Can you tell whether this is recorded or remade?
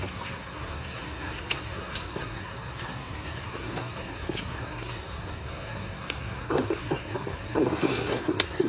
remade